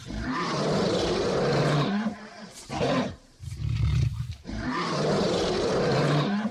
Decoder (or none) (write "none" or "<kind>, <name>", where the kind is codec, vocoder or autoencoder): vocoder, BigVGAN v2